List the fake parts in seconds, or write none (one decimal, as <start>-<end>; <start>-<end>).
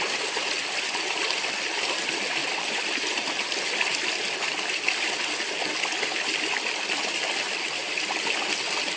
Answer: none